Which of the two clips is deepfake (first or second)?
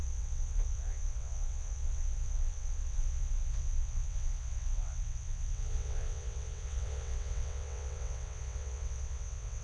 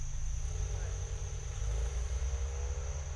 first